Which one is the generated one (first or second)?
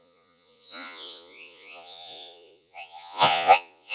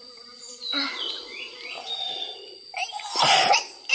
first